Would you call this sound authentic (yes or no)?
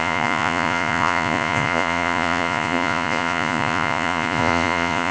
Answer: no